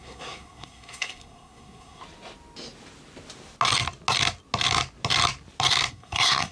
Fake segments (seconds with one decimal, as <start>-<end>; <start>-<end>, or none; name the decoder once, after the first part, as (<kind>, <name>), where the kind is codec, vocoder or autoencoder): 0.0-2.0 (codec, SNAC); 5.9-6.5

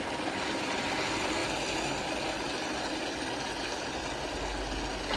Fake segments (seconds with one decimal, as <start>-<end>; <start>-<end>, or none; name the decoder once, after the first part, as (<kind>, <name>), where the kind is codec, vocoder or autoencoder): none

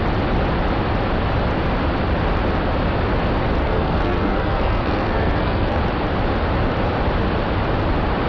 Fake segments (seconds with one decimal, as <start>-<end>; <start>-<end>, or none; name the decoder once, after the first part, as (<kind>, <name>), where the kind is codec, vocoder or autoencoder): 3.6-5.8 (codec, SNAC)

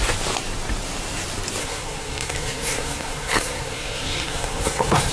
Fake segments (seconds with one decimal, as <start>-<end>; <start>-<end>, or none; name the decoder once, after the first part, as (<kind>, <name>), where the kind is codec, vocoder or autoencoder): 1.6-5.1 (codec, SNAC)

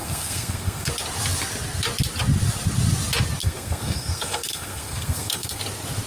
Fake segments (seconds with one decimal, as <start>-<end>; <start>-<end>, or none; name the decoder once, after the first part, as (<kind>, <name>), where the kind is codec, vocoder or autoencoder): 0.0-0.9 (codec, SNAC); 3.4-5.6

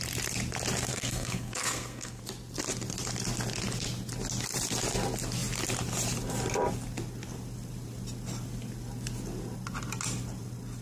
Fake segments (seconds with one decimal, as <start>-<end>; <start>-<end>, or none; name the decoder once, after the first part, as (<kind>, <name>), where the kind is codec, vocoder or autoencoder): 0.9-2.2 (codec, SNAC)

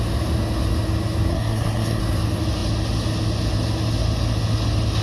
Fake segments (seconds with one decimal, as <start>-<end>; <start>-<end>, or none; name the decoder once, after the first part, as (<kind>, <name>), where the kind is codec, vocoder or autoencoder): 1.3-2.0 (codec, SNAC)